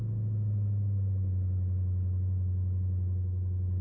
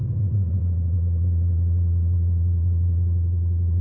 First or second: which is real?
first